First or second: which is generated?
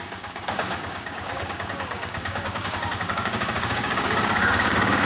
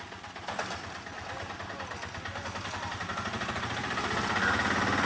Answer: first